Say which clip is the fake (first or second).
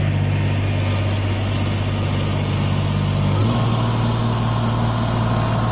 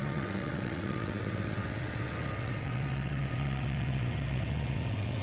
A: second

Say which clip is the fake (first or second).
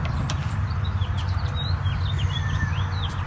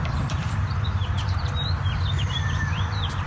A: second